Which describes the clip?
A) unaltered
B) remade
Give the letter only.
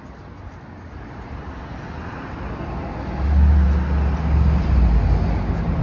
A